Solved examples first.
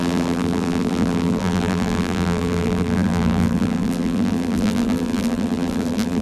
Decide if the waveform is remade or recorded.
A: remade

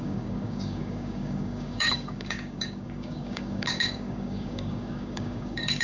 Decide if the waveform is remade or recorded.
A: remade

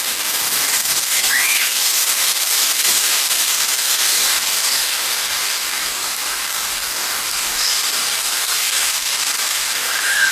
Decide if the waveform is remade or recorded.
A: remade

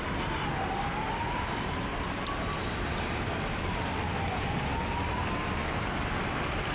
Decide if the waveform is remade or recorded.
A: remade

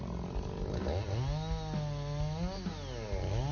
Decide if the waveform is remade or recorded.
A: recorded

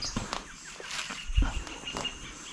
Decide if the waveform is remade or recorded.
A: recorded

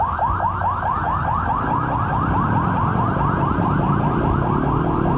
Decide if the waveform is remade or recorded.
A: recorded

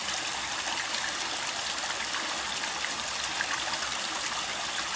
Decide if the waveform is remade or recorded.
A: recorded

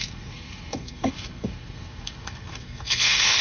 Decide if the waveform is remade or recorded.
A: remade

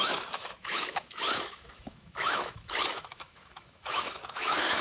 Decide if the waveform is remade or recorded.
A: remade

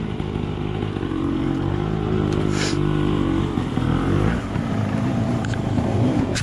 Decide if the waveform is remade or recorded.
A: remade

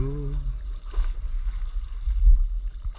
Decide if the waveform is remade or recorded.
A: recorded